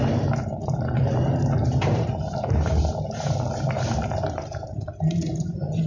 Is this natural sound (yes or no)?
no